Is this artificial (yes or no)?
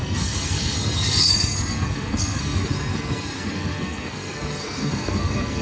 yes